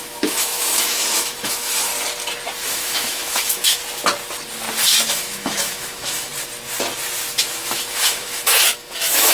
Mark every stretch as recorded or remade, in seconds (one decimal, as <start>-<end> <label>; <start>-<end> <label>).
0.0-1.9 remade; 1.9-2.7 recorded; 2.7-3.8 remade; 3.8-5.1 recorded; 5.1-6.3 remade; 6.3-7.3 recorded; 7.3-9.3 remade